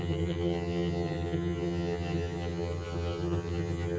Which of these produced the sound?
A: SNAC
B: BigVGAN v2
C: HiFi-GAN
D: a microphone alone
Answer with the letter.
C